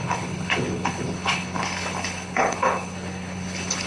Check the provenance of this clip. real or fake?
fake